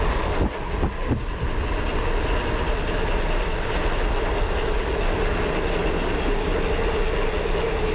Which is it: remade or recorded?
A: recorded